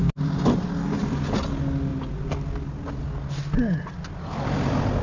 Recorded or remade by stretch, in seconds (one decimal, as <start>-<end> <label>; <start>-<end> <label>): 0.0-5.0 recorded